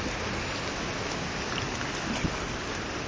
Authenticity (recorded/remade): recorded